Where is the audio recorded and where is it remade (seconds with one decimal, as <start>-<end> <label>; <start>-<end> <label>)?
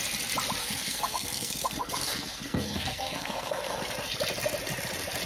0.0-0.6 recorded; 0.6-3.8 remade; 3.8-5.3 recorded